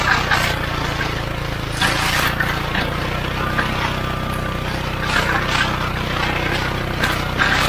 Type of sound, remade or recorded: recorded